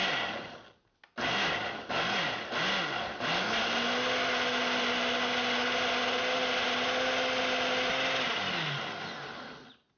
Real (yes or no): yes